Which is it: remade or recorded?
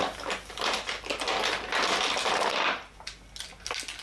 recorded